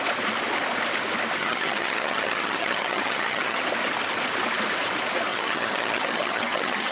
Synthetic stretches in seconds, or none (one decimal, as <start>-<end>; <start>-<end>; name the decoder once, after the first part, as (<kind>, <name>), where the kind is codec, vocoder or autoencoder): 1.4-3.6 (vocoder, HiFi-GAN); 5.3-6.9